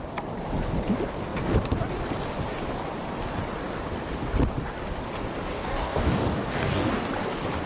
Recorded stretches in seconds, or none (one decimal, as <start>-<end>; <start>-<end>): 0.0-5.5; 7.1-7.7